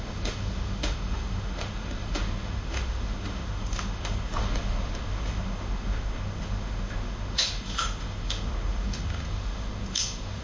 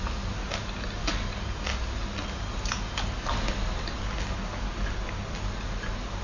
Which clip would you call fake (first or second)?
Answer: first